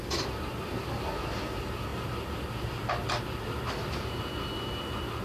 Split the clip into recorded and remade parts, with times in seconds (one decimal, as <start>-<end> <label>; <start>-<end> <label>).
0.0-5.2 recorded